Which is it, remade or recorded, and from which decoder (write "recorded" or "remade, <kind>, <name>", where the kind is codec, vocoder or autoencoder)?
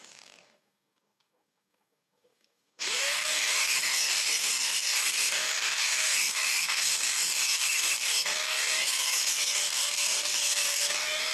remade, codec, DAC